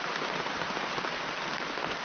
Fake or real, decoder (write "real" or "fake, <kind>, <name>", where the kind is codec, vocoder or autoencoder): real